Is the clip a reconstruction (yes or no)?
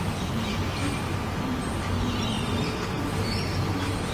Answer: yes